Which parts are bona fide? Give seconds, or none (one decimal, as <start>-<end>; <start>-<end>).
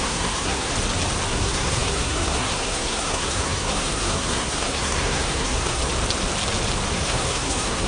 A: 0.7-1.3; 5.8-6.9